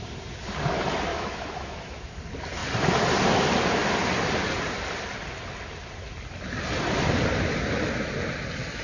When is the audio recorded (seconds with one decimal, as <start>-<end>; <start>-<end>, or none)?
0.0-1.1; 2.2-8.8